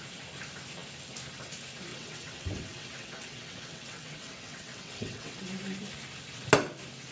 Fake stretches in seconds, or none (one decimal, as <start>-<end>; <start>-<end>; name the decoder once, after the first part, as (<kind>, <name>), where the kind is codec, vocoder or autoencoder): 1.9-5.4 (vocoder, WaveNeXt)